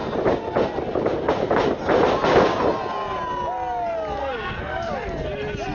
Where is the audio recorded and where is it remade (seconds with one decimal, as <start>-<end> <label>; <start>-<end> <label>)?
0.0-4.2 recorded; 4.2-4.9 remade; 4.9-5.7 recorded